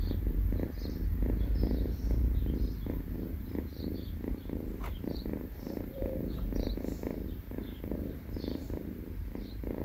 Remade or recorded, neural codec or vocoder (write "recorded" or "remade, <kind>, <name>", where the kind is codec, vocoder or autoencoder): remade, vocoder, BigVGAN v2